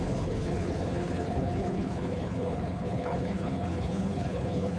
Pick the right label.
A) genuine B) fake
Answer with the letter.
B